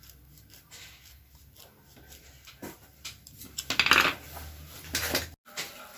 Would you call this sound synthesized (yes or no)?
no